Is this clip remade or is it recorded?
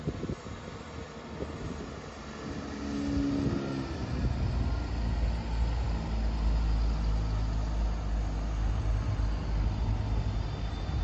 recorded